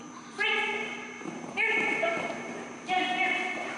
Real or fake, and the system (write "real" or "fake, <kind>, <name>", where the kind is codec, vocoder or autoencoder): fake, vocoder, BigVGAN v2